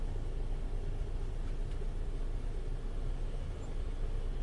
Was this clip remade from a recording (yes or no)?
no